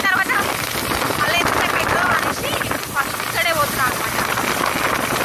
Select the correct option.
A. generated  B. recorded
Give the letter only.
B